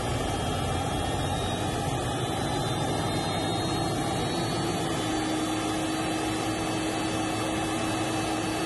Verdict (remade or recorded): recorded